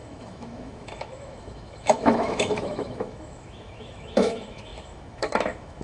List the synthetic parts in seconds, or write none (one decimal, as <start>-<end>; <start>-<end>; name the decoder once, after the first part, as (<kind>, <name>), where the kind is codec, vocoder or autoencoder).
0.0-5.8 (autoencoder, DAC-VAE)